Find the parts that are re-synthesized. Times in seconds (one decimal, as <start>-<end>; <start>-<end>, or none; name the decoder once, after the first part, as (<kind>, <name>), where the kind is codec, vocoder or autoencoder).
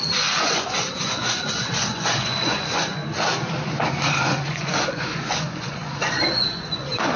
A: 0.0-3.0 (vocoder, Vocos); 3.6-7.2